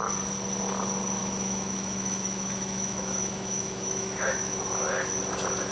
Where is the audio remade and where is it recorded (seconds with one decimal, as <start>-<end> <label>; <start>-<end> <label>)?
0.0-1.2 recorded; 1.2-4.6 remade; 4.6-5.7 recorded